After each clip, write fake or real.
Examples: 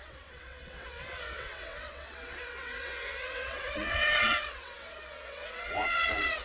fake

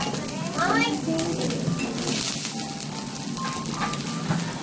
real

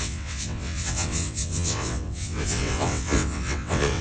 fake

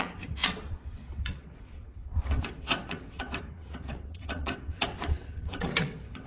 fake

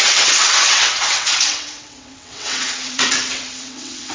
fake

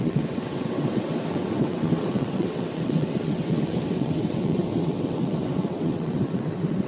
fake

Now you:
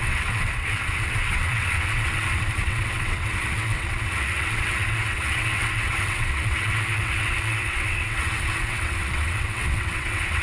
fake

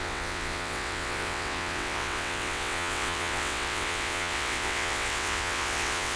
fake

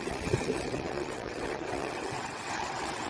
fake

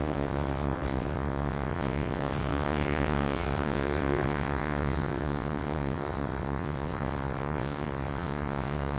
fake